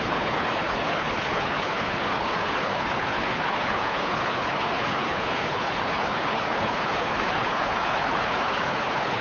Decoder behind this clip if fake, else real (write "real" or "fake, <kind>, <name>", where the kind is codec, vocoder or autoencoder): fake, codec, HILCodec